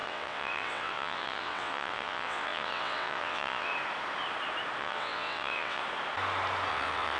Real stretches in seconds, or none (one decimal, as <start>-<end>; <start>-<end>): 3.7-4.8; 5.8-6.7